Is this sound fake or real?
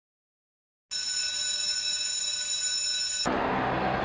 real